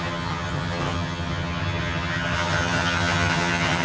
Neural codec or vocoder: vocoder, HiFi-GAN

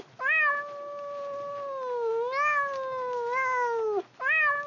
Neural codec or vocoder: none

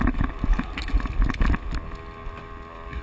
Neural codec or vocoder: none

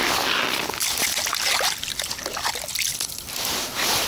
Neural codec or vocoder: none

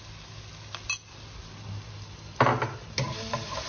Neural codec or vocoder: none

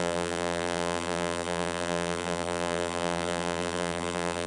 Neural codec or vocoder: vocoder, BigVGAN v2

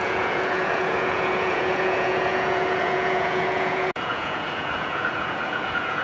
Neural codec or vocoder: vocoder, Vocos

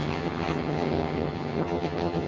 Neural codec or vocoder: vocoder, HiFi-GAN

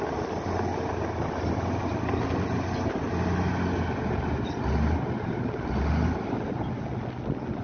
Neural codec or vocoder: none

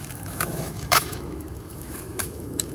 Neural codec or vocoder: autoencoder, DAC-VAE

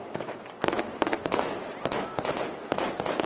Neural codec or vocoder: vocoder, BigVGAN v2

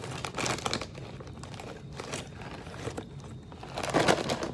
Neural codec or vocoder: none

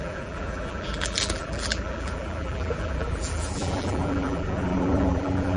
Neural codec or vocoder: vocoder, BigVGAN v2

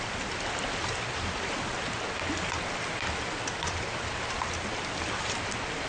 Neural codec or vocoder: none